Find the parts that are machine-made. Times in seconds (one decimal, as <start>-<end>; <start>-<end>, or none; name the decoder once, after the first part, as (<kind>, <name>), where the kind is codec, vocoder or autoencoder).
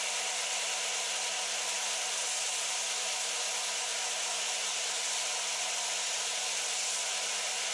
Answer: none